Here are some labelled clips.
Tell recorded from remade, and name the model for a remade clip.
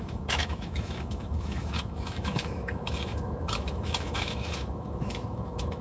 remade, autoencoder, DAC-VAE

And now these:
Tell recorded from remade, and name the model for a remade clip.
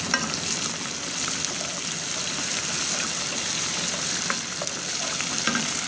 recorded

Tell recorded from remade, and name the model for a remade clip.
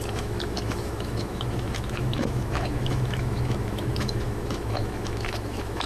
remade, autoencoder, DAC-VAE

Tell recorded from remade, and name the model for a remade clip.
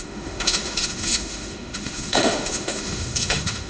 remade, autoencoder, DAC-VAE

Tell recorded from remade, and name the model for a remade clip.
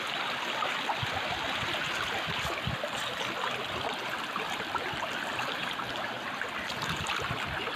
recorded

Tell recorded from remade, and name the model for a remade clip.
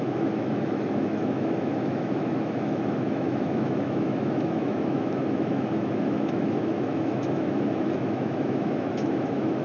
remade, autoencoder, DAC-VAE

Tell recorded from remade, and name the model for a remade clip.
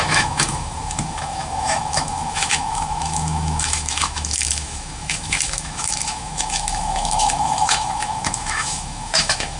remade, autoencoder, DAC-VAE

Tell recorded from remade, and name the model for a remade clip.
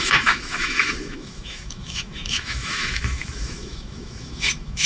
remade, autoencoder, DAC-VAE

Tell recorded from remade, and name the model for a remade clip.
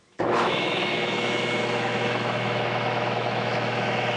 remade, autoencoder, DAC-VAE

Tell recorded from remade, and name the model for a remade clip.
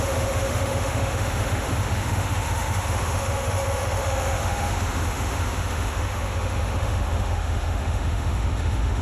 remade, autoencoder, DAC-VAE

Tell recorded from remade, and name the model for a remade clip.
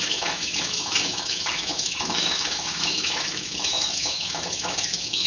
remade, autoencoder, DAC-VAE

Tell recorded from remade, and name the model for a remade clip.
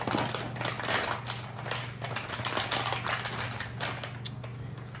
recorded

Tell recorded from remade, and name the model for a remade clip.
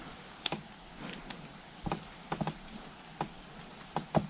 recorded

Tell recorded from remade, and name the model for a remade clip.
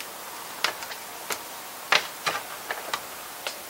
recorded